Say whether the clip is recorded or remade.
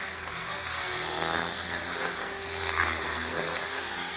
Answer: remade